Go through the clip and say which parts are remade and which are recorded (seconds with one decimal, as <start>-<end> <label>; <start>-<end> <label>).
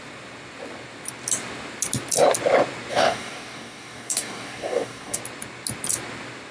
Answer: 0.0-2.9 recorded; 2.9-5.2 remade; 5.2-6.5 recorded